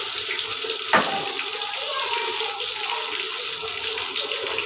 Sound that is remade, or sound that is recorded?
recorded